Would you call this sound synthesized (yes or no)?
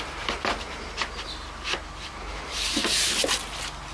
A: no